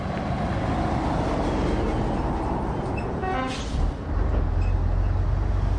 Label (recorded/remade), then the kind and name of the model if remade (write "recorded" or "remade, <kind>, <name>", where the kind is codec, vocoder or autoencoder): recorded